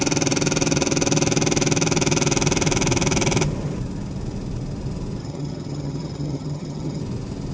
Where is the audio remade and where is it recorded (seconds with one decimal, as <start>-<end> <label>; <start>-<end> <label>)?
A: 0.0-5.2 recorded; 5.2-7.0 remade; 7.0-7.5 recorded